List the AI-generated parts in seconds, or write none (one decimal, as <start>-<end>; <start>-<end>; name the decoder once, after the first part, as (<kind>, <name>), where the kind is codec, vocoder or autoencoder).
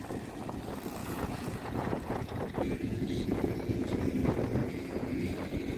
1.0-4.0 (vocoder, Vocos); 4.6-5.2